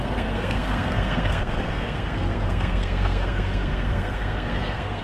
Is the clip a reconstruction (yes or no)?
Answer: yes